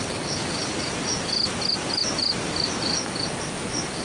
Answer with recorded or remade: recorded